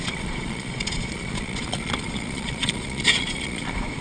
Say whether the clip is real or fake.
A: fake